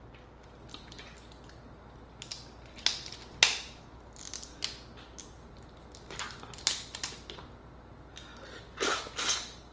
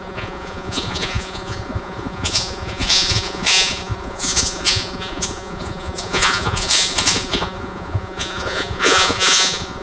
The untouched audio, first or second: first